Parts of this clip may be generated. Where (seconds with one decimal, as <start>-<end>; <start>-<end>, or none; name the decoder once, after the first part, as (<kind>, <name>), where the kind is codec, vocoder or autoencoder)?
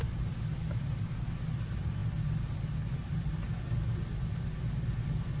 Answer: none